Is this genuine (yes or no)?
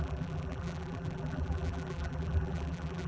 no